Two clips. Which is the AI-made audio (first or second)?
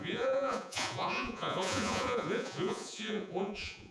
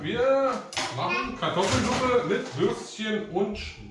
first